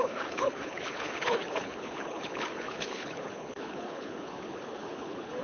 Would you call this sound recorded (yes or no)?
no